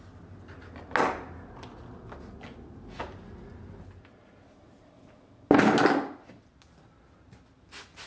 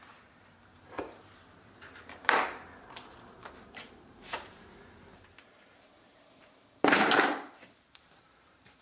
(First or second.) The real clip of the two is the first